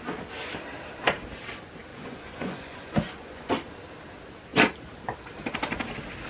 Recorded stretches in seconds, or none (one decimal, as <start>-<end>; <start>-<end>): 0.0-1.9; 3.5-6.3